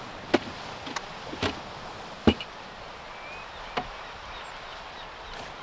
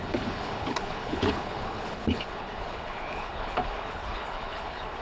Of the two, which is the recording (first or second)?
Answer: first